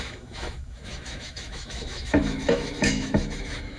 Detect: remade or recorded remade